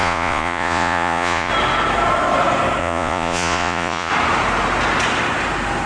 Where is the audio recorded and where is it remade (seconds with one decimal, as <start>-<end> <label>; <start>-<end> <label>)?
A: 0.0-1.5 remade; 1.5-2.8 recorded; 2.8-4.1 remade; 4.1-5.9 recorded